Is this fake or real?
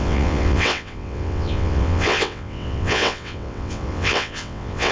fake